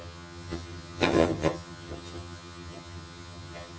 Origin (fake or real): fake